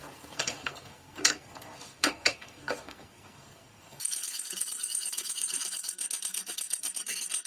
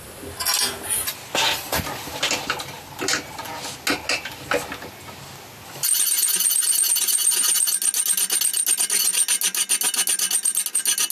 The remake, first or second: first